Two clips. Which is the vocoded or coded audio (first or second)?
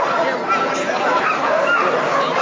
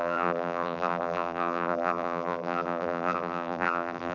second